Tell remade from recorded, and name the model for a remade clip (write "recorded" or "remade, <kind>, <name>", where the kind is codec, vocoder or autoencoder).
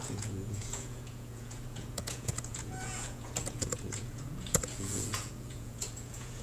remade, vocoder, Vocos